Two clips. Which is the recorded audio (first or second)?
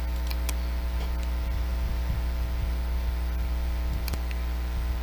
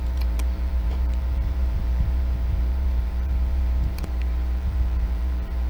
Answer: first